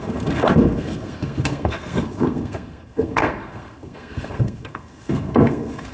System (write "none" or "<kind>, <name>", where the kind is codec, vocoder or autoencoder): codec, SNAC